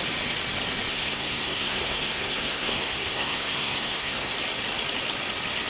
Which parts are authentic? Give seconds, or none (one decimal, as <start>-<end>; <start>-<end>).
0.0-0.9; 4.3-5.7